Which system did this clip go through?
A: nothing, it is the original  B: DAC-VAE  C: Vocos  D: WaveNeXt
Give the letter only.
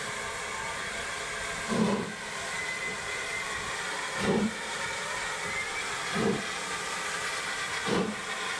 A